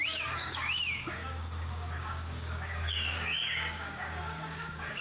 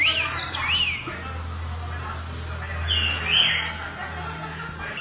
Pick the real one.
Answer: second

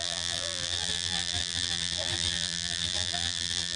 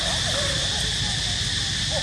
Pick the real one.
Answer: second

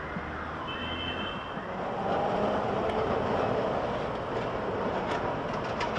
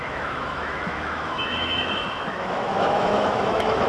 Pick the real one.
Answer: first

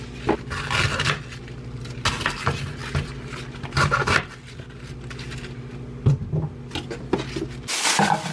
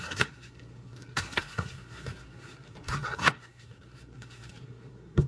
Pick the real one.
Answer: first